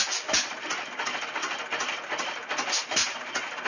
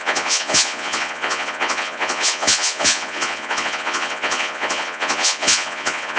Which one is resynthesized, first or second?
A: second